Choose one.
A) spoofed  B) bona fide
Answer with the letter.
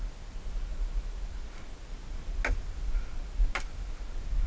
B